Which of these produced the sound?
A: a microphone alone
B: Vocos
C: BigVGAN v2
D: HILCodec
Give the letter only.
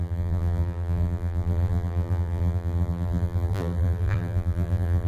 C